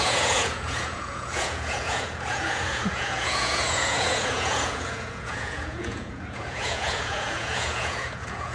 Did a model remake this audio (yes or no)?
yes